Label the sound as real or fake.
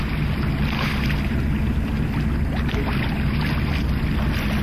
real